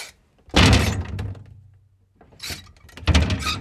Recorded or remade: recorded